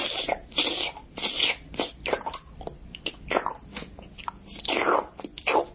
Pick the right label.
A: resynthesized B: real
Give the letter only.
B